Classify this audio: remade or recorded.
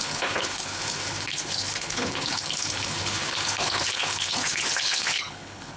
remade